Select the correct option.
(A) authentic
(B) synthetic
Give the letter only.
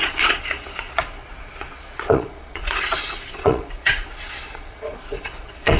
B